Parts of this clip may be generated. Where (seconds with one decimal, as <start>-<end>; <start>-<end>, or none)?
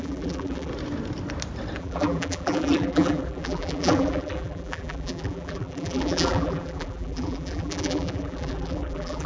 0.0-0.7; 1.8-9.3